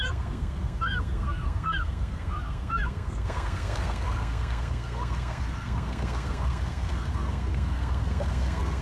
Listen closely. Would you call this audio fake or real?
fake